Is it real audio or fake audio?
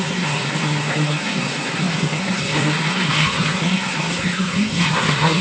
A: fake